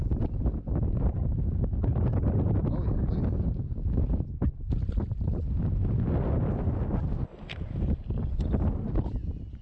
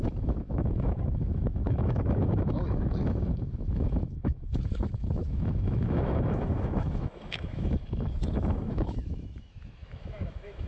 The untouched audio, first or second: first